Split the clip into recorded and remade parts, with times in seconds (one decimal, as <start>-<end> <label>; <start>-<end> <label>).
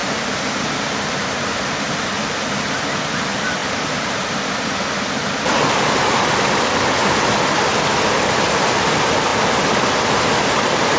0.0-1.8 remade; 1.8-3.6 recorded; 3.6-4.2 remade; 4.2-11.0 recorded